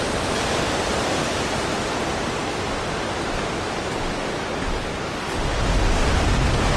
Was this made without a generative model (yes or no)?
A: yes